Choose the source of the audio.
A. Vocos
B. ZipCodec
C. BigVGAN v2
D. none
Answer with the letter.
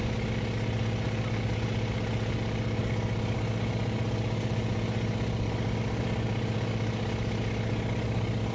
D